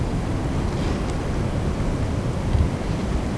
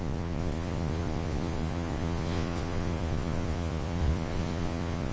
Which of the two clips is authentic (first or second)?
first